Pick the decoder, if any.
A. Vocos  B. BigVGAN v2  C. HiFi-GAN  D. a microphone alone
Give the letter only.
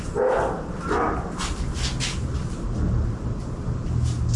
D